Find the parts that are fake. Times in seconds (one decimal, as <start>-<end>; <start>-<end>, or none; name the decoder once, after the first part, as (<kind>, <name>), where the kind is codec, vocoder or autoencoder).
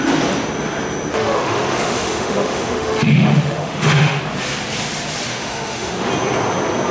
1.1-4.2 (autoencoder, DAC-VAE); 5.3-6.1